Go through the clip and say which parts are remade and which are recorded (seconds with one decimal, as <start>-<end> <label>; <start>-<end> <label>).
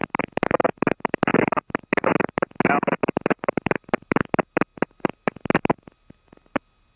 0.0-7.0 recorded